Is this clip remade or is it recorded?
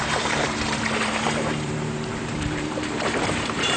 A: remade